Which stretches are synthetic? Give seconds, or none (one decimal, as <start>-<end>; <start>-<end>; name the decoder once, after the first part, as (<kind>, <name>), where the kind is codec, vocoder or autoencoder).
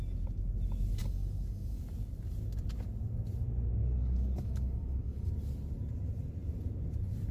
1.0-1.8 (codec, DAC); 3.8-5.3